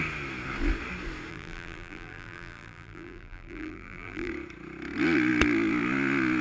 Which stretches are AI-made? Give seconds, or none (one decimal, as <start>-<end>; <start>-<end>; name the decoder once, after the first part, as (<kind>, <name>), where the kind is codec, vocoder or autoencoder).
1.3-4.3 (vocoder, BigVGAN v2)